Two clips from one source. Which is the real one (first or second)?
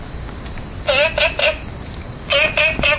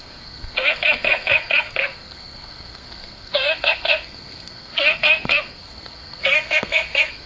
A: first